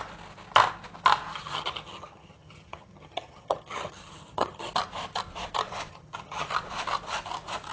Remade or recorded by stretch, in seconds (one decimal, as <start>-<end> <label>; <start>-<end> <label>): 0.0-1.3 recorded; 1.3-4.7 remade; 4.7-5.9 recorded; 5.9-6.5 remade; 6.5-7.7 recorded